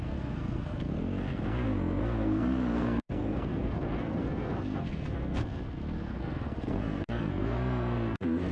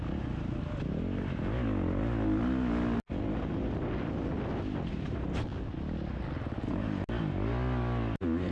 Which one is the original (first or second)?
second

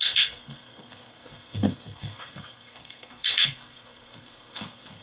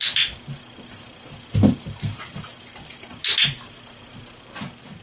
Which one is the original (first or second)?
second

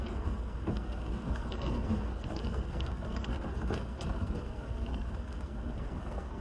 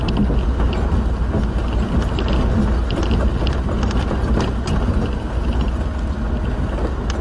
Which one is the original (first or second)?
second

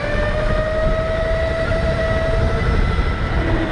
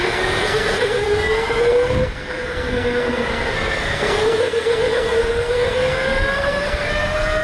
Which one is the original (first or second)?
first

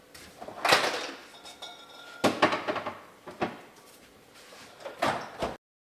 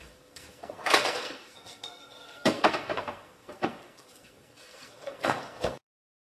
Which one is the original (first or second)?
first